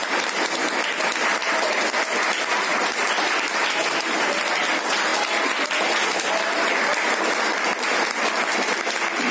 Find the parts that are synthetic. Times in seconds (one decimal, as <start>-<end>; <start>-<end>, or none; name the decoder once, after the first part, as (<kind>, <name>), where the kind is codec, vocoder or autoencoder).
none